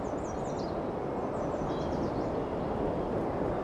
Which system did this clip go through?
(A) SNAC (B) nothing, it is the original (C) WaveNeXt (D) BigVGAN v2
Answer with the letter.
B